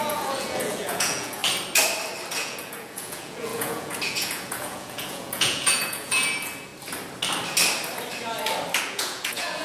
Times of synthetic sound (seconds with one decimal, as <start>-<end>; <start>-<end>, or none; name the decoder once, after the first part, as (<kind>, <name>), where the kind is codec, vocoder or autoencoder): 0.0-1.4 (vocoder, Vocos); 2.3-6.7; 8.8-9.6